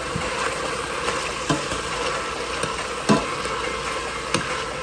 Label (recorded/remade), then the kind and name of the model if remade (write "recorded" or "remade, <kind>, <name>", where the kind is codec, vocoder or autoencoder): recorded